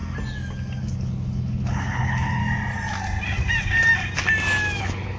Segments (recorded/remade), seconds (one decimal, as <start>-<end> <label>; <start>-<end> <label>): 0.0-0.8 recorded; 0.8-2.4 remade; 2.4-4.8 recorded; 4.8-5.2 remade